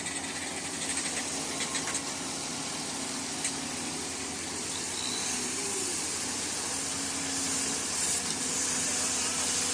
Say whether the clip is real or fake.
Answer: real